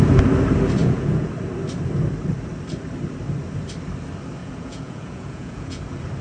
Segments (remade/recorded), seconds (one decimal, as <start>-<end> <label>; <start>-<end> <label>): 0.0-0.8 recorded; 0.8-1.3 remade; 1.3-4.4 recorded; 4.4-5.8 remade; 5.8-6.2 recorded